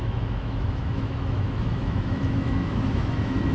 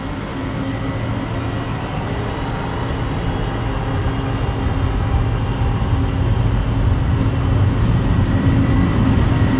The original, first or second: second